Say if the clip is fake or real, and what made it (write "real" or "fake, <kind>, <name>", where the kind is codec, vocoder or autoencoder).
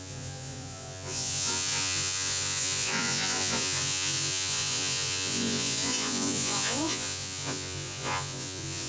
fake, vocoder, Vocos